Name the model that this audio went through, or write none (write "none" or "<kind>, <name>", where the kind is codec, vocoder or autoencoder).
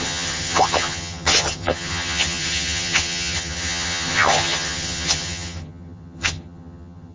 vocoder, HiFi-GAN